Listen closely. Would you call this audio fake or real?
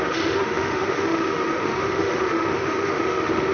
fake